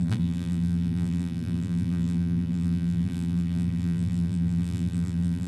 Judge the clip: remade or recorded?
remade